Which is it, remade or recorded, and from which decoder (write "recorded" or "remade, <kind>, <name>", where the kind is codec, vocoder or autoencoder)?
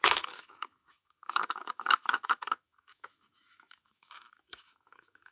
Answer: remade, autoencoder, DAC-VAE